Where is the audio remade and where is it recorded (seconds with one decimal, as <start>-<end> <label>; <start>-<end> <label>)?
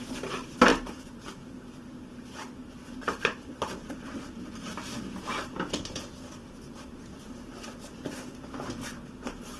0.0-0.7 recorded; 0.7-4.9 remade; 4.9-7.1 recorded; 7.1-8.7 remade; 8.7-9.6 recorded